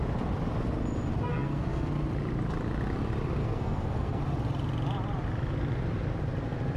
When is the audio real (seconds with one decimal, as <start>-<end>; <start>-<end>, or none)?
0.0-1.3; 1.9-3.4; 4.2-6.8